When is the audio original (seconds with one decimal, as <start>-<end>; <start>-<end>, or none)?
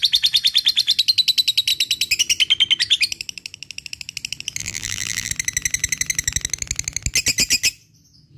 0.0-4.6; 5.3-8.4